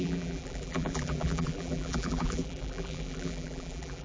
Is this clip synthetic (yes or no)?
yes